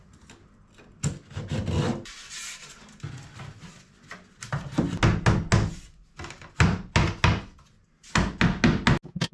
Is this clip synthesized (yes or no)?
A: no